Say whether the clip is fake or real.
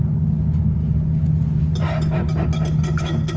real